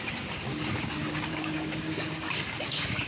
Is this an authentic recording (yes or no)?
no